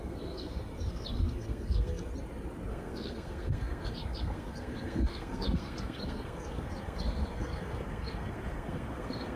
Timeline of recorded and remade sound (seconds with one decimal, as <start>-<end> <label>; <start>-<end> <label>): 0.0-2.1 remade; 2.1-2.7 recorded; 2.7-9.4 remade